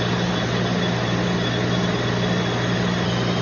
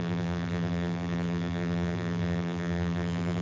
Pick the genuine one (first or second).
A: first